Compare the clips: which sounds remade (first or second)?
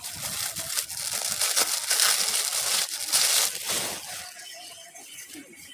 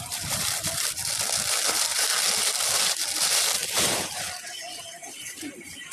second